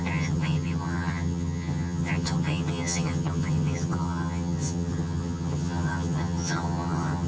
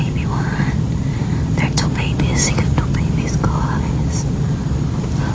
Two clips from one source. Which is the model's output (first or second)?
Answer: first